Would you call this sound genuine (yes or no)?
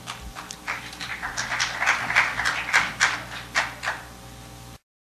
yes